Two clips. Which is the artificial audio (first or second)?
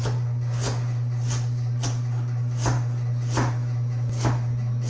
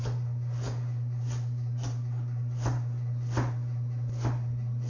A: second